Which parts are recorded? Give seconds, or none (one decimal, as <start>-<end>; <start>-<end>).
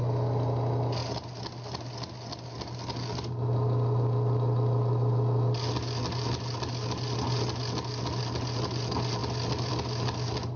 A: 0.0-10.6